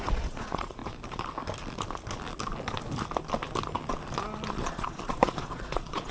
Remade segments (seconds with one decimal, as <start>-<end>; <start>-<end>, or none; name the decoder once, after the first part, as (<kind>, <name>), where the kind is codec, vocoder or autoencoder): 0.0-0.8 (vocoder, Vocos); 4.5-6.1